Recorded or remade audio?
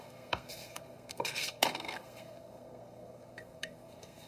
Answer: remade